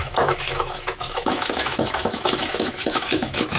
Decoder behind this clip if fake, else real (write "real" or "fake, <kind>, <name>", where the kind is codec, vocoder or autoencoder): fake, autoencoder, DAC-VAE